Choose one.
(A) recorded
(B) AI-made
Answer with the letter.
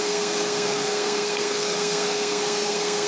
B